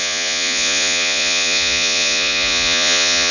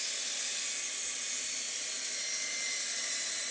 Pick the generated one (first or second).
first